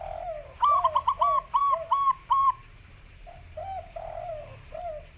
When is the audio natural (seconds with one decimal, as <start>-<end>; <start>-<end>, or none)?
0.0-1.6; 3.8-5.2